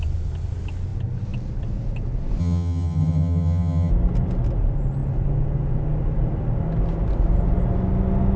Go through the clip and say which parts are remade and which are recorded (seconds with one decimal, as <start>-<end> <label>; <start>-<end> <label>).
0.0-2.4 recorded; 2.4-3.9 remade; 3.9-8.4 recorded